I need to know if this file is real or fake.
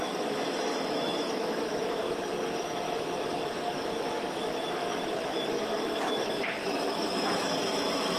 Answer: fake